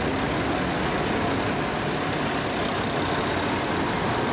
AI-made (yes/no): no